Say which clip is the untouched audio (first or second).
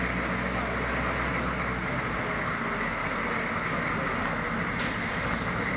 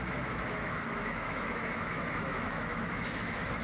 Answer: first